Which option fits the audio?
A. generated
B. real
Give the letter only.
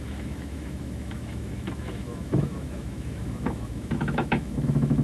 A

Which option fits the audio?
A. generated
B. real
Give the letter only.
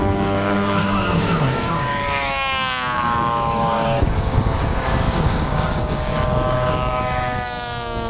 A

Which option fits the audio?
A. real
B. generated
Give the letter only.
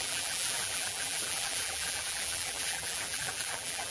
B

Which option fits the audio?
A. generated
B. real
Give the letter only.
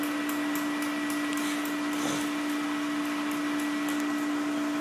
B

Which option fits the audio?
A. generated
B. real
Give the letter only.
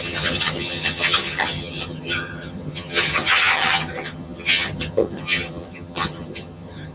A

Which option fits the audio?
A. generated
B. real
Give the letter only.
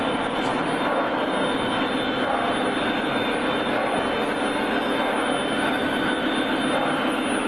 B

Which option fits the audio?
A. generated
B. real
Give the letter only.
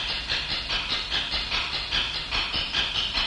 B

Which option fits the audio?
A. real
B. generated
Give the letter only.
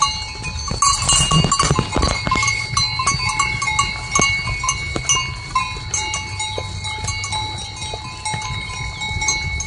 A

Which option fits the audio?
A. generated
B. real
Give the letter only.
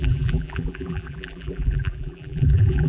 A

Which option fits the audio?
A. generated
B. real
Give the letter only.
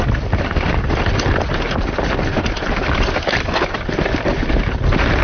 B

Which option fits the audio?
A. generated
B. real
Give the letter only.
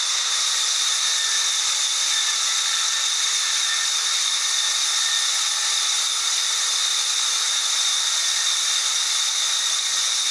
B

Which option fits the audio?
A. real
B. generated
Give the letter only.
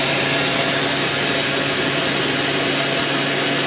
A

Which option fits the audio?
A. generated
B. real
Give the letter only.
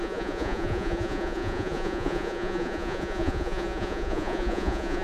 A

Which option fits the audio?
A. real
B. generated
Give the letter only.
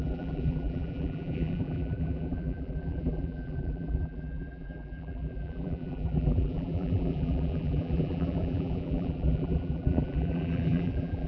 B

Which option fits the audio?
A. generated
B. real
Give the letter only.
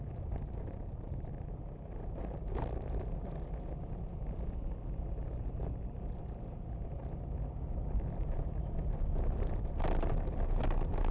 B